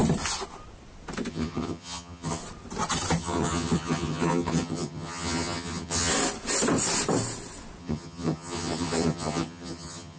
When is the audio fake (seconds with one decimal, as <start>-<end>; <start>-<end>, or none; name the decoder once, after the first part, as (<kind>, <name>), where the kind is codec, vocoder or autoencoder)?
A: 1.3-2.4 (vocoder, HiFi-GAN); 3.2-6.1; 7.8-10.2